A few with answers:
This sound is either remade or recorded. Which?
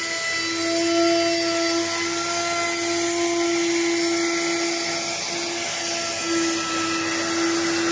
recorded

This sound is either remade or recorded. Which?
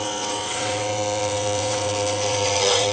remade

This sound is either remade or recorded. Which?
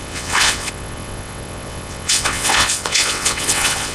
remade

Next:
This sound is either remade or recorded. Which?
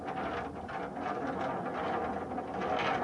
recorded